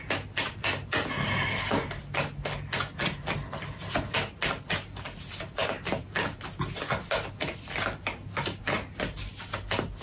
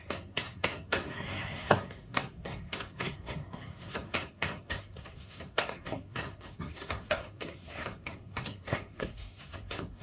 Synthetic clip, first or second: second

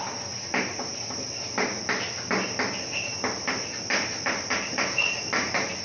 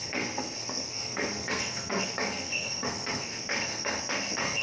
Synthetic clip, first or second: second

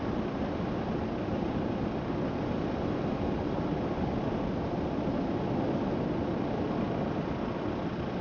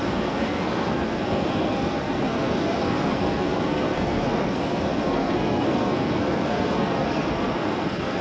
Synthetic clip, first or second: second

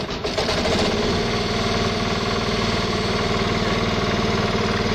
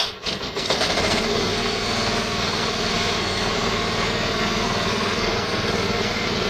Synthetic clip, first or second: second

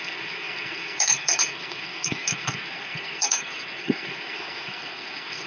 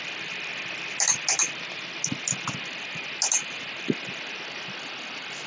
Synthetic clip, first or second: first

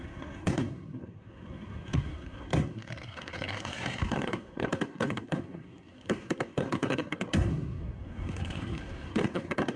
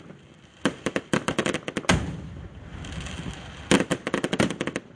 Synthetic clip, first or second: first